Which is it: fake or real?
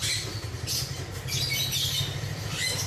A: real